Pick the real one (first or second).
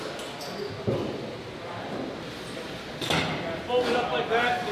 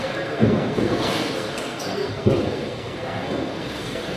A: first